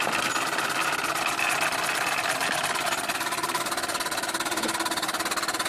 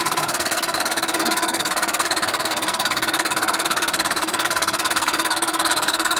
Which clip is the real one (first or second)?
first